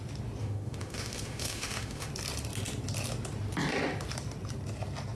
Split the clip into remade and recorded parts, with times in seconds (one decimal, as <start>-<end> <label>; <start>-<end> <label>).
0.0-0.4 recorded; 0.4-2.1 remade; 2.1-5.1 recorded